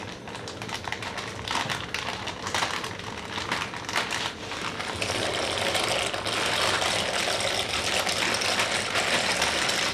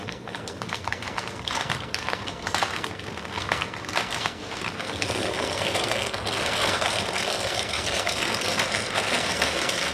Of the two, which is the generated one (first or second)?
second